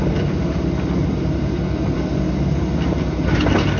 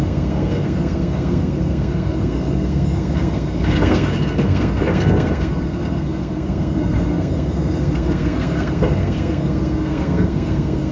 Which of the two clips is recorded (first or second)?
first